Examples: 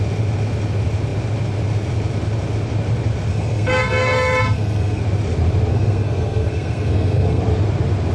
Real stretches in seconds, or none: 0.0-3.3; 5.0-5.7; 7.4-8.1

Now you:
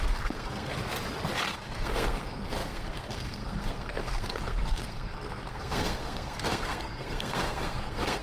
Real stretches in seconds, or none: 0.7-1.5

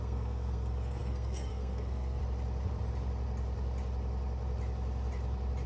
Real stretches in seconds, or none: 2.2-5.7

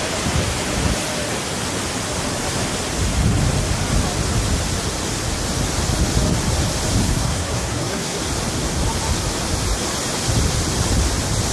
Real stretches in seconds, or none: 0.0-7.0; 8.2-11.5

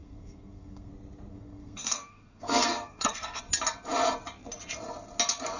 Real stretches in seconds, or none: 0.9-1.3; 3.4-5.6

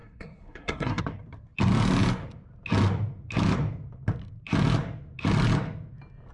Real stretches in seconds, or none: 1.0-6.3

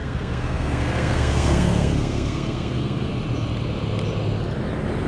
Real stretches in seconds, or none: 3.1-5.1

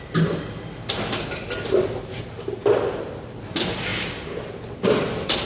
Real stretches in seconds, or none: 0.0-5.5